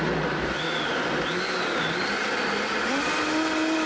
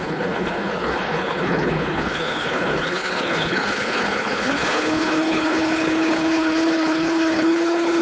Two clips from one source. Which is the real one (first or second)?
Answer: first